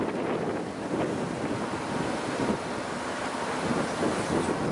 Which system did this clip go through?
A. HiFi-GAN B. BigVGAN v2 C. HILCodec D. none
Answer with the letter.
D